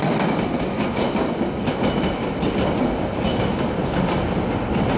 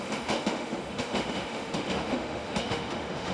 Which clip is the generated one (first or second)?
second